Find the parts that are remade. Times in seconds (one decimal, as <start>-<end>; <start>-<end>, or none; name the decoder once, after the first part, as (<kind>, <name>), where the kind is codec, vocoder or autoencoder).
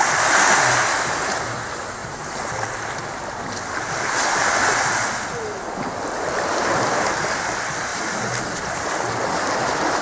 none